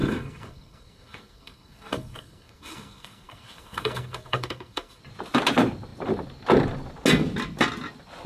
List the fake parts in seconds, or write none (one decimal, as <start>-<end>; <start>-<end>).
0.0-5.0